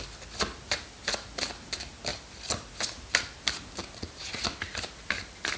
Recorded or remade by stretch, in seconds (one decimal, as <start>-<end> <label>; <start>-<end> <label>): 0.0-2.1 recorded; 2.1-2.7 remade; 2.7-3.8 recorded; 3.8-5.6 remade